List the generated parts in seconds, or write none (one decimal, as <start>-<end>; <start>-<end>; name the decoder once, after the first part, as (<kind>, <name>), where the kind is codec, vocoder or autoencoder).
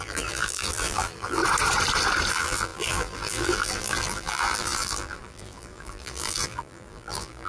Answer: 0.0-1.4 (vocoder, BigVGAN v2); 2.3-7.5